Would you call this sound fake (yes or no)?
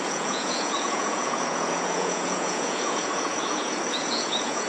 yes